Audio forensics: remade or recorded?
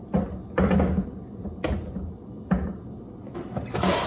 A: recorded